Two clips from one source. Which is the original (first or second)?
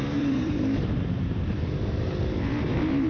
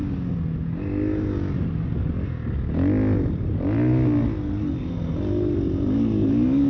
second